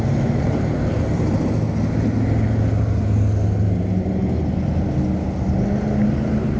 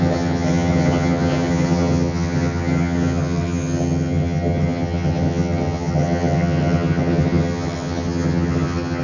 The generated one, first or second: second